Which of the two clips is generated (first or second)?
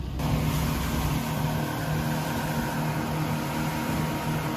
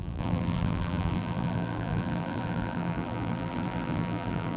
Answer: second